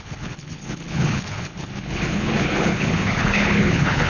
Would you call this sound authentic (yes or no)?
no